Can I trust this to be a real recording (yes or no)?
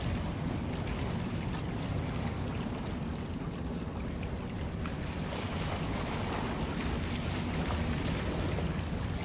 yes